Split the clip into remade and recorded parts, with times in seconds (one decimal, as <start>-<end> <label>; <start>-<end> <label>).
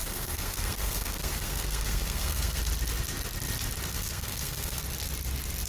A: 0.0-2.6 remade; 2.6-3.9 recorded; 3.9-4.8 remade; 4.8-5.7 recorded